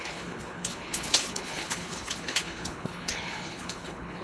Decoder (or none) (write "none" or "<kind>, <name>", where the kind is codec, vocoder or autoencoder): codec, HILCodec